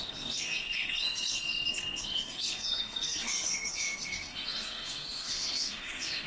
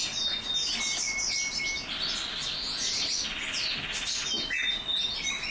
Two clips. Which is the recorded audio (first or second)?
second